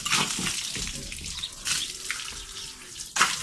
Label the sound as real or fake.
real